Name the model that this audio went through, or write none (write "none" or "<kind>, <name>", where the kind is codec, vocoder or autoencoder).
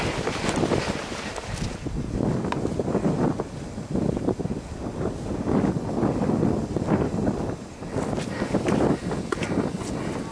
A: none